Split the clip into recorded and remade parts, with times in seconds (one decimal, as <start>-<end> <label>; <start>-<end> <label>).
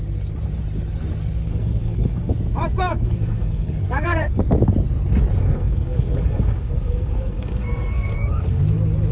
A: 0.0-1.4 recorded; 1.4-2.3 remade; 2.3-2.9 recorded; 2.9-4.4 remade; 4.4-5.4 recorded; 5.4-8.6 remade; 8.6-9.1 recorded